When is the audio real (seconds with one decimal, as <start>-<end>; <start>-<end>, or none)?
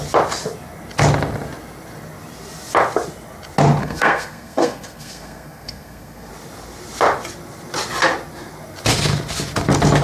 0.0-3.8; 6.3-10.0